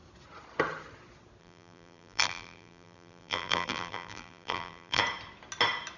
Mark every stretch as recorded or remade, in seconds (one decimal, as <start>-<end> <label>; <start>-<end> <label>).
0.0-1.4 recorded; 1.4-5.0 remade; 5.0-6.0 recorded